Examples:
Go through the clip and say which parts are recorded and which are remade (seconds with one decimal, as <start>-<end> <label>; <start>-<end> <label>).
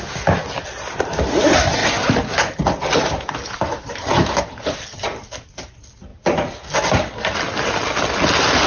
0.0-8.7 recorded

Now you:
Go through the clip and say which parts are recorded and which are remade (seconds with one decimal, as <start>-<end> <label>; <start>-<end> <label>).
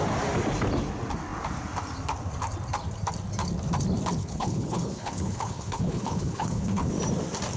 0.0-4.2 recorded; 4.2-6.9 remade; 6.9-7.6 recorded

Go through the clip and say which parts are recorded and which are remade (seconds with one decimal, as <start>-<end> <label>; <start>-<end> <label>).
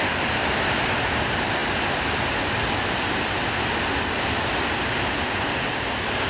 0.0-6.3 recorded